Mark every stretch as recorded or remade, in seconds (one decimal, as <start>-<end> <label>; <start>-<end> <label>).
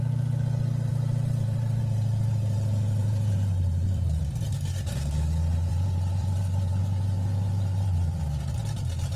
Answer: 0.0-0.9 recorded; 0.9-1.8 remade; 1.8-3.0 recorded; 3.0-4.2 remade; 4.2-5.7 recorded; 5.7-8.2 remade; 8.2-9.2 recorded